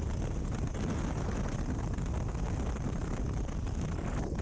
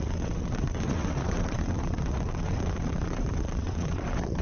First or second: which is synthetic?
second